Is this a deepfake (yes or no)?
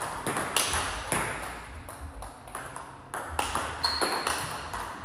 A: no